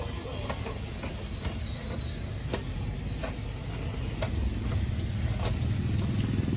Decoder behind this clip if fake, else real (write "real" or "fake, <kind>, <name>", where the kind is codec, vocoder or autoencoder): real